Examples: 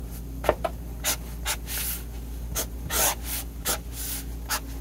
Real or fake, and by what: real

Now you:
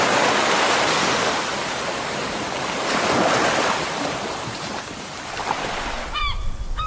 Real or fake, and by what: real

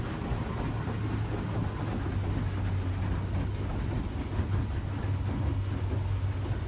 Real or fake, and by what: real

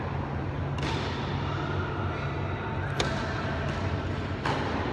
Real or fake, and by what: real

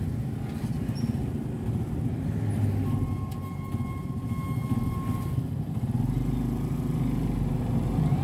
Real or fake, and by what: real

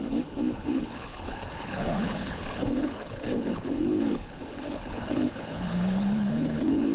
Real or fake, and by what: fake, codec, HILCodec